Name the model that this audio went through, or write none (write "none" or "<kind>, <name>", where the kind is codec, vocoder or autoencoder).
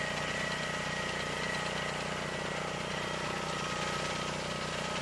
none